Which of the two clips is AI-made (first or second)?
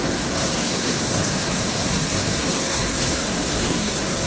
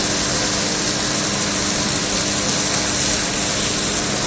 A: first